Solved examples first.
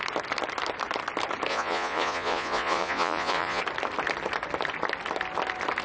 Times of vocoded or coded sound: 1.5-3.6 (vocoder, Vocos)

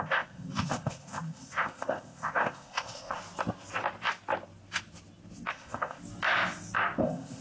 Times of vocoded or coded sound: 0.0-3.2 (codec, ZipCodec); 5.5-6.0; 7.0-7.4